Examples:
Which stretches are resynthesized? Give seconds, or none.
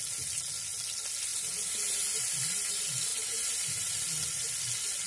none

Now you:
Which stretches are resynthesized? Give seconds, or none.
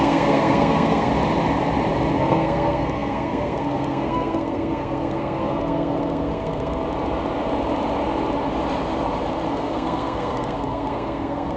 0.0-1.1 (codec, SNAC); 2.2-6.8; 9.5-11.6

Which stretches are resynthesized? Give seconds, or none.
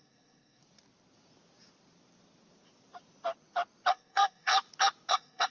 0.0-0.6 (codec, SNAC); 3.9-4.5; 5.1-5.5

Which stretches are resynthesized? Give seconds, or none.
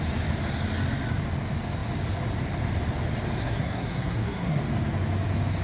3.4-4.6 (codec, SNAC)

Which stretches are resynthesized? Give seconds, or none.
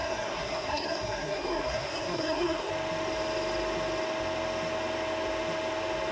0.0-2.7 (codec, SNAC)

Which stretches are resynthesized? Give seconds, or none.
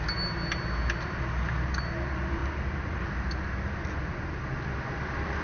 none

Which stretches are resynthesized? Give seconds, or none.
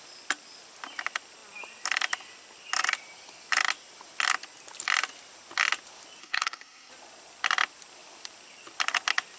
6.2-6.9 (codec, SNAC)